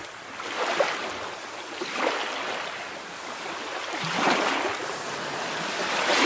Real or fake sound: real